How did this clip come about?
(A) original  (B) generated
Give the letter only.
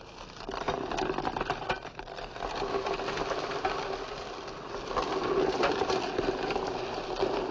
A